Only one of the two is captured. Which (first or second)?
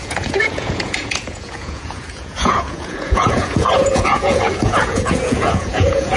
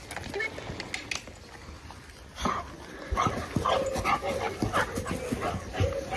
second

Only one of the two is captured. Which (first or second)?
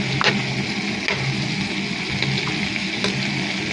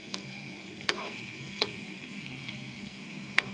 first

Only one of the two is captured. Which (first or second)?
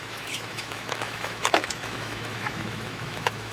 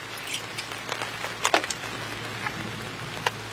second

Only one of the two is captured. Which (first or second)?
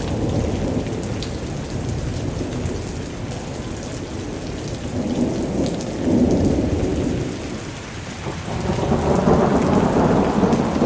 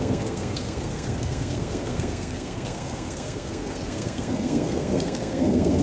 first